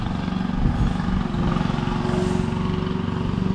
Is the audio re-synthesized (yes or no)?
no